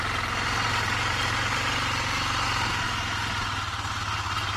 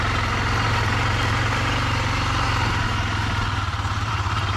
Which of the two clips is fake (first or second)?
second